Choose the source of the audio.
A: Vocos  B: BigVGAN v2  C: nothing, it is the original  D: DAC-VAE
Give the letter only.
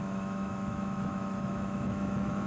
D